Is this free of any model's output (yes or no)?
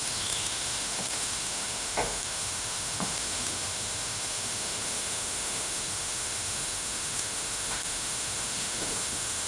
no